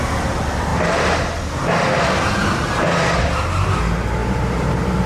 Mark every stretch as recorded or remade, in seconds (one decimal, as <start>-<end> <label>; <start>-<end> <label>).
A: 0.0-4.2 recorded; 4.2-5.1 remade